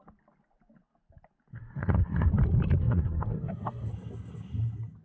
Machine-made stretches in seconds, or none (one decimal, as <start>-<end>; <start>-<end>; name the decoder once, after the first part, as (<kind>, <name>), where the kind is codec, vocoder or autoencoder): 1.5-2.3 (codec, SNAC); 2.8-3.9